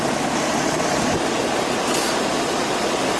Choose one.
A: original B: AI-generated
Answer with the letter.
B